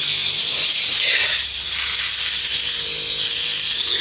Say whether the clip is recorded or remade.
recorded